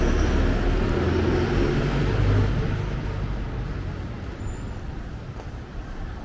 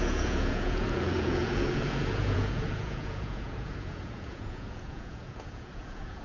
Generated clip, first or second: second